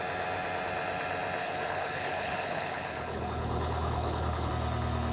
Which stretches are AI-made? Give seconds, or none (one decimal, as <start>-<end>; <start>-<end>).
1.4-4.5